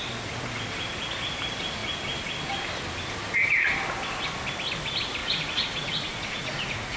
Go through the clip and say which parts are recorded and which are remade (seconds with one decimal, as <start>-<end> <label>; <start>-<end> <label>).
0.0-5.2 recorded; 5.2-7.0 remade